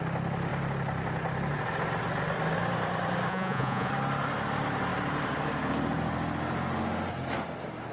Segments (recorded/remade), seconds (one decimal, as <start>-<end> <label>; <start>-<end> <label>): 0.0-3.3 recorded; 3.3-3.9 remade; 3.9-7.9 recorded